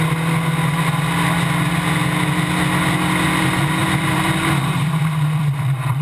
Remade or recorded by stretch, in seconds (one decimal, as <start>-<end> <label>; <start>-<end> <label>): 0.0-3.8 recorded; 3.8-6.0 remade